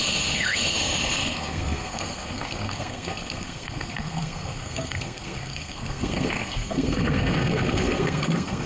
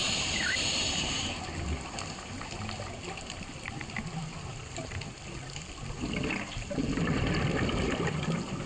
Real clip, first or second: second